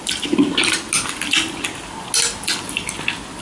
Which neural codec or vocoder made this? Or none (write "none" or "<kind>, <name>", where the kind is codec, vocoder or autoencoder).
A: none